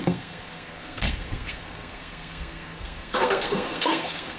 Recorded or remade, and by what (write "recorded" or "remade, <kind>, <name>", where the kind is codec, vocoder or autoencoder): remade, codec, SNAC